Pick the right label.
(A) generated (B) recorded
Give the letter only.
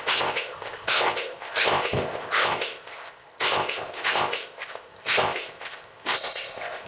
A